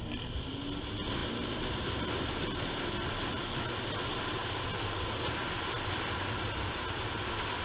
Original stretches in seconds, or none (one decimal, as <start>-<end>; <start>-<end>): 0.0-7.6